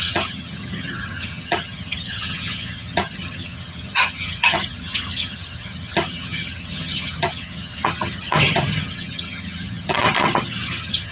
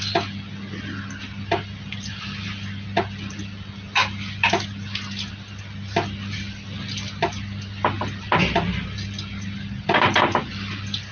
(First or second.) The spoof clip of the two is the first